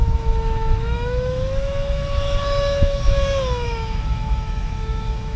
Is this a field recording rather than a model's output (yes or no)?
no